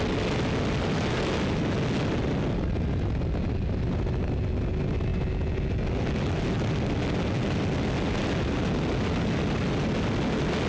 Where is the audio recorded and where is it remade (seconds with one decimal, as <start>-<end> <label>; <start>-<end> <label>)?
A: 0.0-10.7 recorded